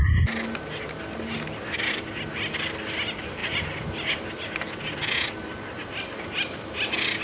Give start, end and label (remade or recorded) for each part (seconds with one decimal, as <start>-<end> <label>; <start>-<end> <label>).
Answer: 0.0-7.2 recorded